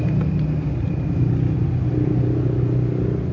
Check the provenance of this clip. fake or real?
real